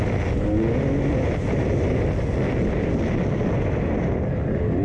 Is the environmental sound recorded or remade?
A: recorded